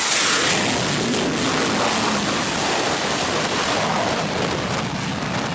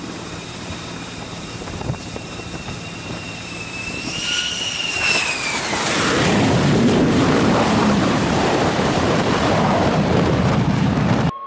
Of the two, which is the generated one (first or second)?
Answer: second